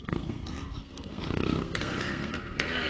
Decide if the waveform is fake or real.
fake